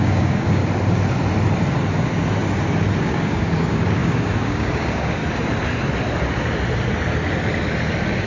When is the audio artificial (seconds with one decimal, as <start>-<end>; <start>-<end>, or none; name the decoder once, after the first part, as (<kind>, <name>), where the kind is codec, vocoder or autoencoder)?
0.0-0.6 (codec, DAC); 3.0-5.2

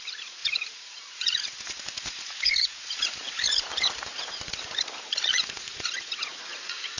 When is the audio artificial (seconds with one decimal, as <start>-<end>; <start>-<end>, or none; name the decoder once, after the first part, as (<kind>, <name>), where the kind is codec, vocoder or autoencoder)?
0.0-7.0 (vocoder, Vocos)

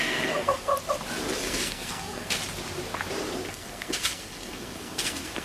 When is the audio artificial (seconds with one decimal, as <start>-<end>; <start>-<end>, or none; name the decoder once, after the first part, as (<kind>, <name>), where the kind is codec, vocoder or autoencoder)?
0.0-0.7 (codec, SNAC); 1.4-2.4; 3.5-5.4